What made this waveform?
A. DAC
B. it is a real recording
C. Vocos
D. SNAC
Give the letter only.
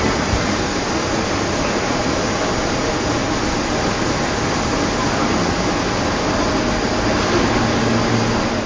B